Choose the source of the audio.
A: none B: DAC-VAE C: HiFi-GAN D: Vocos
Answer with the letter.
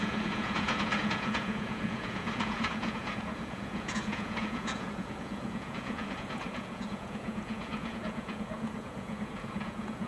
D